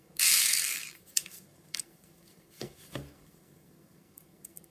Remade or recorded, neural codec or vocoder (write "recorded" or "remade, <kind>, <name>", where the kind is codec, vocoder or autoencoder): remade, codec, SNAC